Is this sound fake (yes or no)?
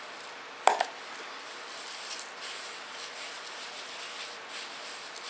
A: no